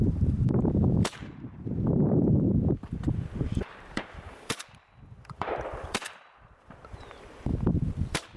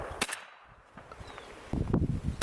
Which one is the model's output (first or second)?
first